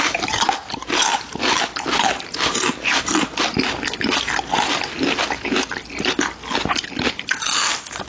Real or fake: real